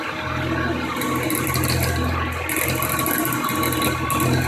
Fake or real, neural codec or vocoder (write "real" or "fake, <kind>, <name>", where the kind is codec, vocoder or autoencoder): real